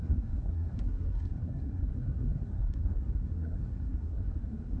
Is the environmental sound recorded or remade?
remade